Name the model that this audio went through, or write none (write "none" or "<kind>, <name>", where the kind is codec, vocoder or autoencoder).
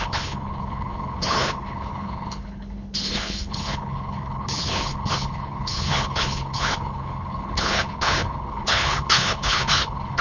codec, HILCodec